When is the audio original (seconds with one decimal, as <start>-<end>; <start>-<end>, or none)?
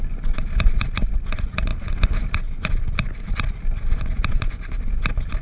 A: 0.0-5.4